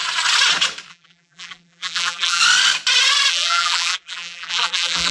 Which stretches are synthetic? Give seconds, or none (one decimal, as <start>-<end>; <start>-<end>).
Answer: 0.9-2.4; 3.3-5.1